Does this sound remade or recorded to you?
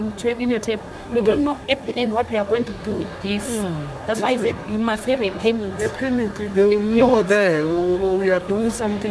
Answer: remade